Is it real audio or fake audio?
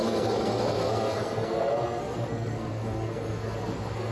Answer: fake